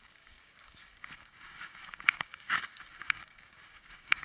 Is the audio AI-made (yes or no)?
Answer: yes